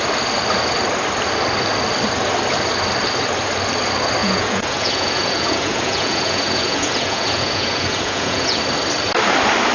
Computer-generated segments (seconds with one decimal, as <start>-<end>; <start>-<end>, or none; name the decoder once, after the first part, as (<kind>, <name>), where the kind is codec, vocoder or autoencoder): 4.2-8.6 (vocoder, Vocos)